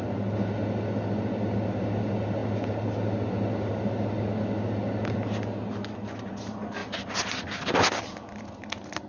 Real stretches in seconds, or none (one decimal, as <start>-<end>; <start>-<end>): 0.0-9.1